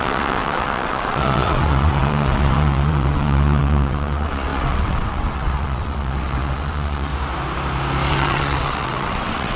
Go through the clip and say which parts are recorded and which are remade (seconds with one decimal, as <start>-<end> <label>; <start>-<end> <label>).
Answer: 0.0-7.1 remade; 7.1-8.1 recorded; 8.1-9.6 remade